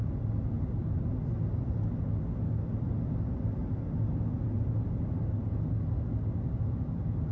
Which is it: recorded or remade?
recorded